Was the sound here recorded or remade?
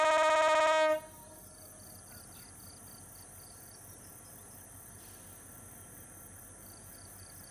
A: recorded